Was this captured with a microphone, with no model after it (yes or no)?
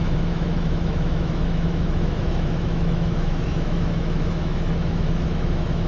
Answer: no